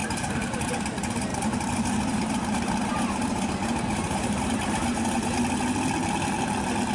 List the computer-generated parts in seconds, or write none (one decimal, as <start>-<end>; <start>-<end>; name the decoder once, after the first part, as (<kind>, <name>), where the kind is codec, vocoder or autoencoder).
0.0-0.7 (vocoder, BigVGAN v2); 1.3-5.4